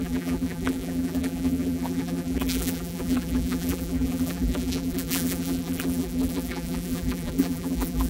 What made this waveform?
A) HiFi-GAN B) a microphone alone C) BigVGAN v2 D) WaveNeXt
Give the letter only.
C